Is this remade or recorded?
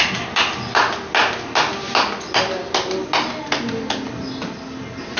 recorded